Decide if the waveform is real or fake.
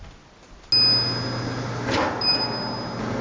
real